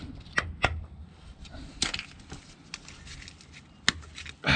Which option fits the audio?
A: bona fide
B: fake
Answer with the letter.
A